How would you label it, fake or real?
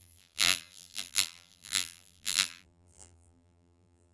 fake